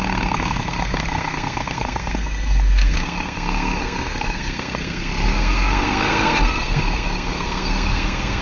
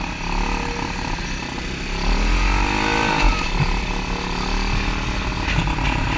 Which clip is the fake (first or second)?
first